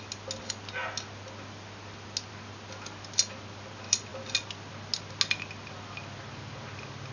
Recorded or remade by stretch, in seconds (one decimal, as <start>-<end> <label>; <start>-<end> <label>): 0.0-7.1 recorded